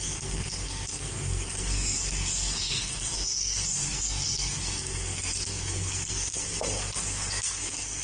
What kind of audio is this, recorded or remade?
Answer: remade